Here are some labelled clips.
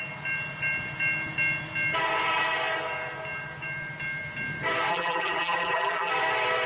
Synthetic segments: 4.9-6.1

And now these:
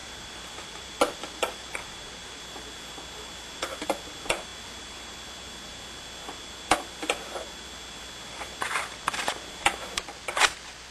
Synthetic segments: 0.0-2.4

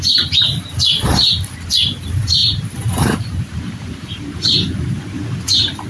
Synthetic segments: 2.4-4.8

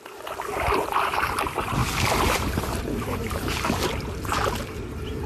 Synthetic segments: 1.8-3.7